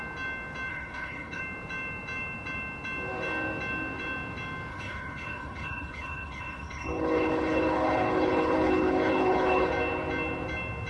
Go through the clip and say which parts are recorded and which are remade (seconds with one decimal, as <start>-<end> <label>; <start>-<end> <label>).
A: 0.0-0.7 recorded; 0.7-1.4 remade; 1.4-4.7 recorded; 4.7-9.7 remade; 9.7-10.9 recorded